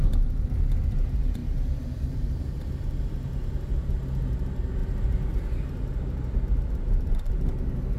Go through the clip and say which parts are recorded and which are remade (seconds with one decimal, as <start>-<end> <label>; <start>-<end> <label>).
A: 0.0-1.4 recorded; 1.4-2.6 remade; 2.6-4.8 recorded; 4.8-7.3 remade; 7.3-8.0 recorded